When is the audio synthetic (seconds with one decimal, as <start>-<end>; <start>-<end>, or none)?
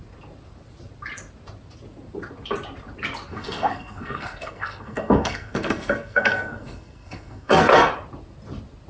3.3-7.9